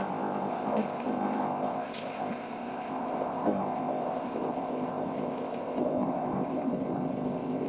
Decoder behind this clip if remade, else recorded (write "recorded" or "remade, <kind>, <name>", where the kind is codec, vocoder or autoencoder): remade, codec, ZipCodec